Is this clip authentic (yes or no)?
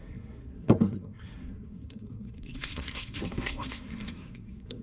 no